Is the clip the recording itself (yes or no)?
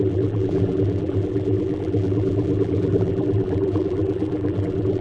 no